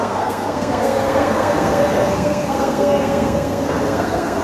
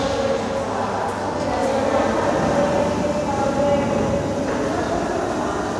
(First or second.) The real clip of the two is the second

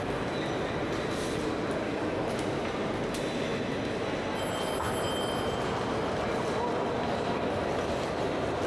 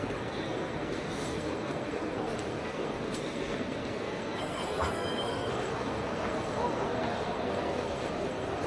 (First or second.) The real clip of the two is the first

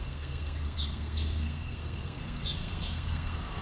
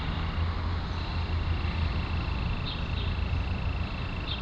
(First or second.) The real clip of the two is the second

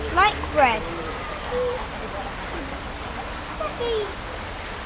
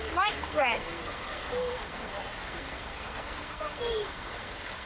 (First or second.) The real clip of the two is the first